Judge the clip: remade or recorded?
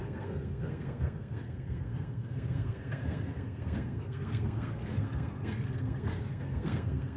remade